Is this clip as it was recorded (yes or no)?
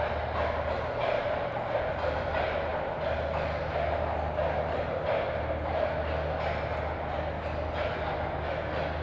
yes